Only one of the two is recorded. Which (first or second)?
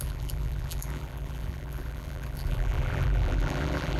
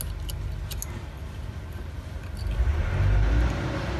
second